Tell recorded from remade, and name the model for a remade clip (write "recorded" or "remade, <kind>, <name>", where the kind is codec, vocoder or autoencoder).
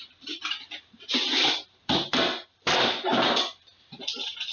remade, vocoder, BigVGAN v2